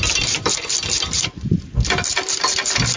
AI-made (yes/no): yes